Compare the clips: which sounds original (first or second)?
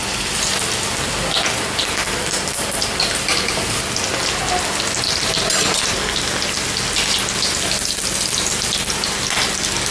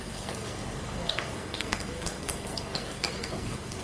first